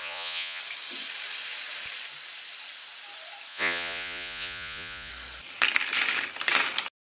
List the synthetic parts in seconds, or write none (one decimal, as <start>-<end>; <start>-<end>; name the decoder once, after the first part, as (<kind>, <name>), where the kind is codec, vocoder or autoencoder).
0.0-0.6 (vocoder, Vocos); 3.5-5.1